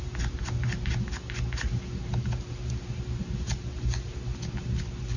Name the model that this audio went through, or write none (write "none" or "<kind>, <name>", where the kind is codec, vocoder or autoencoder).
none